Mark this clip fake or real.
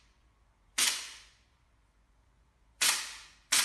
fake